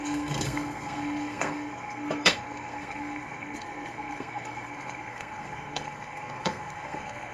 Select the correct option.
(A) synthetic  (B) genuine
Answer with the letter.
A